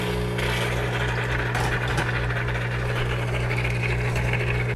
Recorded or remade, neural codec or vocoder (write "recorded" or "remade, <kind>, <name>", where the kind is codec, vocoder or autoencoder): recorded